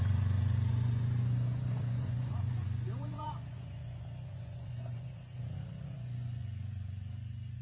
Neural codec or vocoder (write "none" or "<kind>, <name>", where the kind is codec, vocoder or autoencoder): vocoder, Vocos